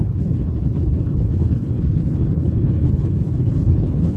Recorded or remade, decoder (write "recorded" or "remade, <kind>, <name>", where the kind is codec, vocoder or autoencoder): remade, codec, HILCodec